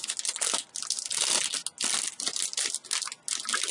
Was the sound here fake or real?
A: real